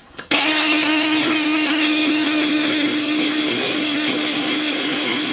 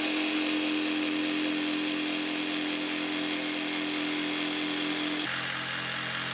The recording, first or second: second